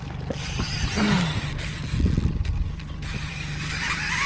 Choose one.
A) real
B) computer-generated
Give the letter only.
A